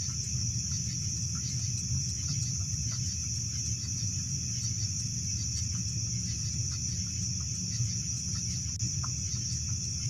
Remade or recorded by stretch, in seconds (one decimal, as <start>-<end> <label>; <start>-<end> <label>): 0.0-10.1 recorded